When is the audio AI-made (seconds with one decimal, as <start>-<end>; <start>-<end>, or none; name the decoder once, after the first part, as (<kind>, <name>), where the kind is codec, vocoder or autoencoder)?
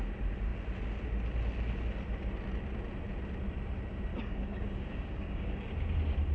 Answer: 4.1-5.7 (codec, DAC)